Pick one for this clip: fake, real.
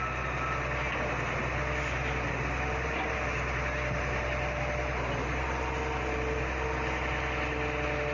real